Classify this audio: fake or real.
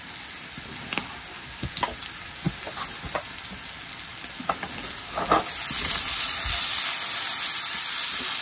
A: real